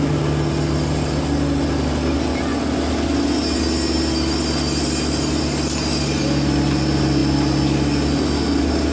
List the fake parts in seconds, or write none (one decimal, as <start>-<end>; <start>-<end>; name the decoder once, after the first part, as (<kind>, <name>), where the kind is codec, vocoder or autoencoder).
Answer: none

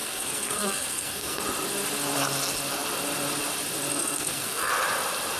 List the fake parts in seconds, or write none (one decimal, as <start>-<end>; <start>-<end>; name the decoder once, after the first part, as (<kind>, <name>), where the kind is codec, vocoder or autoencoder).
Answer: 0.0-1.4 (codec, SNAC); 3.9-4.7

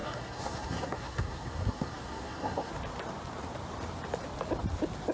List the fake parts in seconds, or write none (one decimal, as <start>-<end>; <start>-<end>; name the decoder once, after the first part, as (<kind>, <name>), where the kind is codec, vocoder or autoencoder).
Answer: 0.0-2.7 (codec, SNAC)

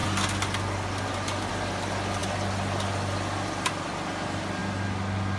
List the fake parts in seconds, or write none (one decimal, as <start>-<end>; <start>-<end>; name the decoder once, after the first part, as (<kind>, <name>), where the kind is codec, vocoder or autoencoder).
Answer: 2.2-3.7 (vocoder, BigVGAN v2)

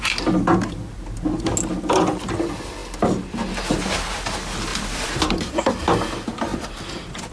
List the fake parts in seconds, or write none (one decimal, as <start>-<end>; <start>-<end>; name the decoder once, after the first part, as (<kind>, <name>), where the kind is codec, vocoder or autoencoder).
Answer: 4.7-5.7 (vocoder, BigVGAN v2); 6.5-7.3

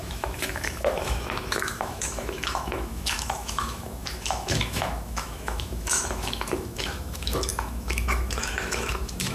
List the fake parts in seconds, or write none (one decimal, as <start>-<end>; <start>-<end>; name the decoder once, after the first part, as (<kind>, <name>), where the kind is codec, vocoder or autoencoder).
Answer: 0.0-9.3 (autoencoder, DAC-VAE)

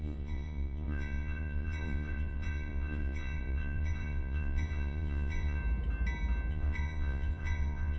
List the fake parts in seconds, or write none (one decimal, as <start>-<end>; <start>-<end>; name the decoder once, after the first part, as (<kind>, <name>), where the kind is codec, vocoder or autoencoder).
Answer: 0.0-5.6 (vocoder, Vocos); 6.5-8.0

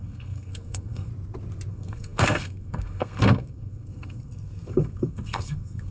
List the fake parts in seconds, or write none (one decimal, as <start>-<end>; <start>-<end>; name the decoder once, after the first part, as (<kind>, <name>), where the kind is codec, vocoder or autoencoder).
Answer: 0.0-1.1 (codec, SNAC); 1.7-5.9